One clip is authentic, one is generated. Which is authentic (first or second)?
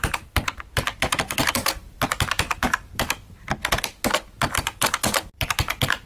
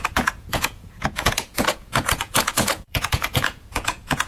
first